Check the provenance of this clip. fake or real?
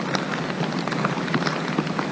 real